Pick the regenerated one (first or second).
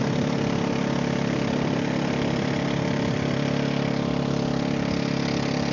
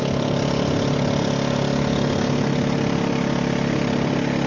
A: first